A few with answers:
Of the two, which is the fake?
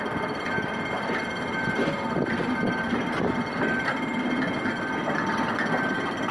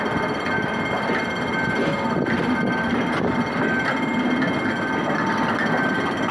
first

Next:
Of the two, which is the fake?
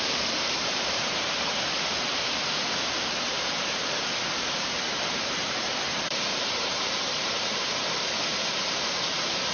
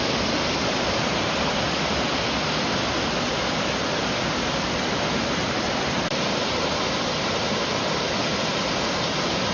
first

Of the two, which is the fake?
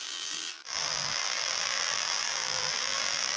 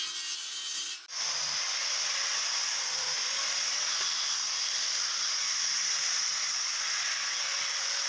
first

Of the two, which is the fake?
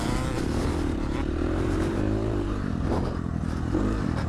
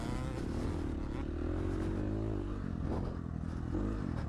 first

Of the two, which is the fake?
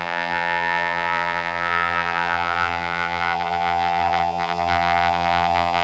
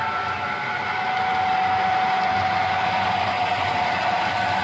first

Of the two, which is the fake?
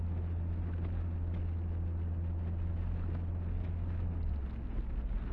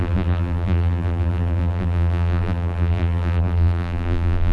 second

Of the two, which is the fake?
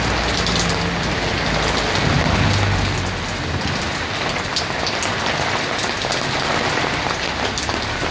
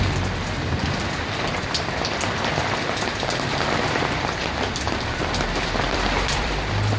second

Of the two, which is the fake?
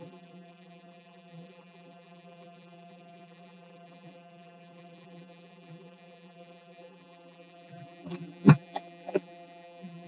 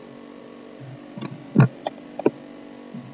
first